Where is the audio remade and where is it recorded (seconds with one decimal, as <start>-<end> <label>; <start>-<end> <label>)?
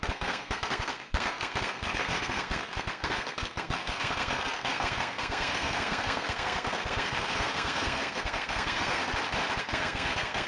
0.0-9.0 remade; 9.0-9.6 recorded; 9.6-10.5 remade